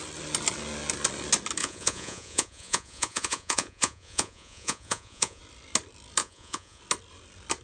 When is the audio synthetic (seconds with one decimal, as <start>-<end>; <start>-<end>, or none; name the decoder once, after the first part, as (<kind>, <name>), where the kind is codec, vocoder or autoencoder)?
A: 1.6-5.4 (vocoder, Vocos); 6.2-6.8